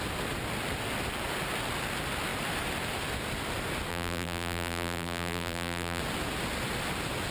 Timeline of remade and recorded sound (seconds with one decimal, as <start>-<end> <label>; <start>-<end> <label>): 0.0-3.9 recorded; 3.9-6.0 remade; 6.0-7.3 recorded